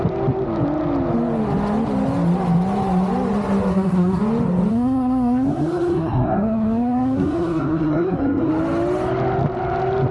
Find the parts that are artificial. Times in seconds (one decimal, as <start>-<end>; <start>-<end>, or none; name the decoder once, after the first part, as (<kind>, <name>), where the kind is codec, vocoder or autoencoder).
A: 3.7-4.2 (codec, SNAC); 4.7-8.5